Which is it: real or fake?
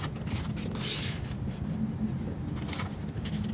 real